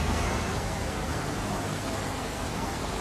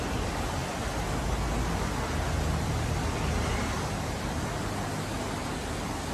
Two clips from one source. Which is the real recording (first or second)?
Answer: second